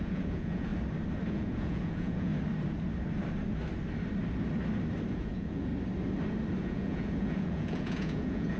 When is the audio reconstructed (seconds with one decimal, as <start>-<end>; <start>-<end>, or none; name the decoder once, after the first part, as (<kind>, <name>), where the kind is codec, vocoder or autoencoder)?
0.0-0.7 (vocoder, Vocos); 1.3-2.3; 5.1-5.7; 6.6-8.6